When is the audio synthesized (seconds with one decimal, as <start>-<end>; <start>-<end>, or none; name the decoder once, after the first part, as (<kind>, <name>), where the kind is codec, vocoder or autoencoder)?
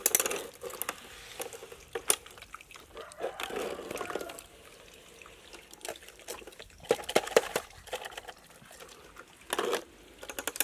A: none